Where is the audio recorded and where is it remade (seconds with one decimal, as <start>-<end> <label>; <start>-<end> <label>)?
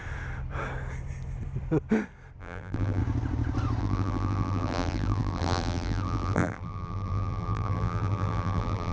0.0-2.4 recorded; 2.4-3.0 remade; 3.0-3.8 recorded; 3.8-8.9 remade